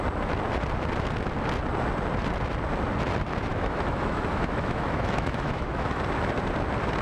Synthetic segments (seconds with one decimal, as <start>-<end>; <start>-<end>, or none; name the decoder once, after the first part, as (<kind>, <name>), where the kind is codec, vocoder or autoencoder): 3.5-6.0 (autoencoder, DAC-VAE)